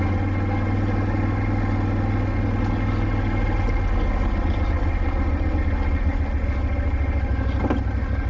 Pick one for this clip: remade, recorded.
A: recorded